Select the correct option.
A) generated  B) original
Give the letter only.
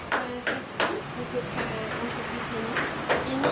B